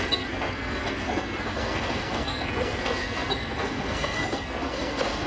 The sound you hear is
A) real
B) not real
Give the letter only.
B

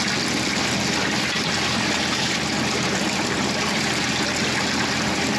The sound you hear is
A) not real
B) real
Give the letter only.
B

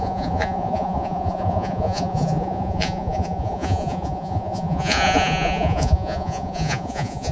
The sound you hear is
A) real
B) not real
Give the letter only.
B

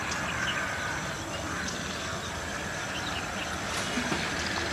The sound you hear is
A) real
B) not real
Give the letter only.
A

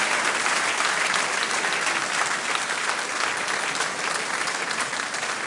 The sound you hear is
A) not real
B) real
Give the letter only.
B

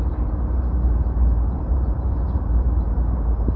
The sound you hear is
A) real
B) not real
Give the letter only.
B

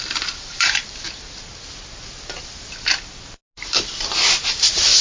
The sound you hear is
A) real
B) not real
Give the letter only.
A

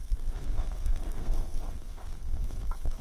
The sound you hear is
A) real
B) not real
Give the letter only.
B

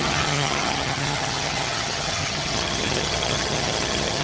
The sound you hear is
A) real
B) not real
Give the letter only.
B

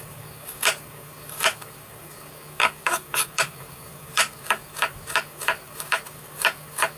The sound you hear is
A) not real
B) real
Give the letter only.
A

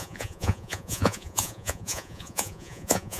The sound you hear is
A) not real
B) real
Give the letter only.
A